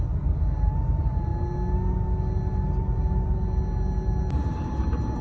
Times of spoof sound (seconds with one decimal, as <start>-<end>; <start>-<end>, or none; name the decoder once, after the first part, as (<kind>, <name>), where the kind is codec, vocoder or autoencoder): none